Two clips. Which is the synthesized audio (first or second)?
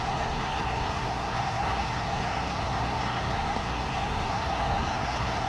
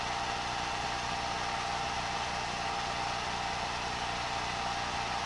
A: first